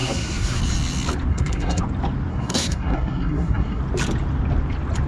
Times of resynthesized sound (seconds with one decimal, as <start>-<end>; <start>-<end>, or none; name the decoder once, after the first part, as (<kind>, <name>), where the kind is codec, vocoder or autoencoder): 0.0-0.6 (codec, SNAC); 1.3-1.8; 2.3-3.8